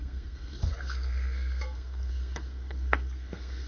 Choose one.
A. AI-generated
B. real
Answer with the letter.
A